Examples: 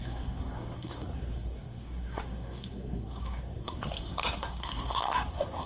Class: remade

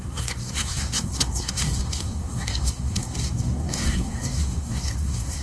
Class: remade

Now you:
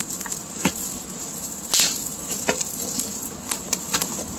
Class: recorded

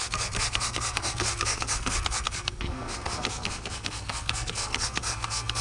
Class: remade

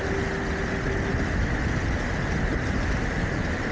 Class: recorded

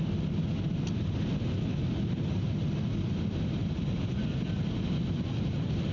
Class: recorded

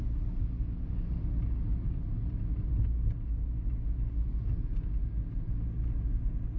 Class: recorded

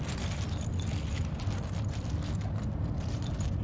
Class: recorded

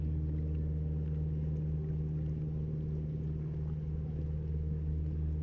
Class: recorded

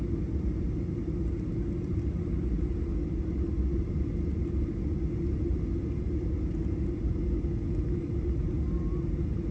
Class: recorded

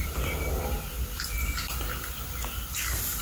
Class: recorded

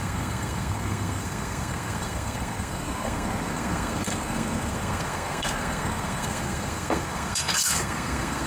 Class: remade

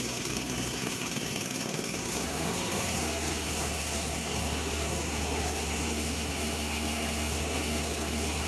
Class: remade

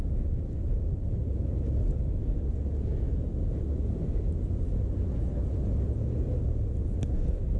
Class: recorded